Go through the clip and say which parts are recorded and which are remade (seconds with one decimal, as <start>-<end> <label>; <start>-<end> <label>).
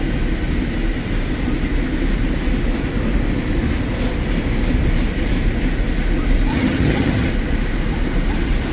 0.0-6.5 recorded; 6.5-7.3 remade; 7.3-8.7 recorded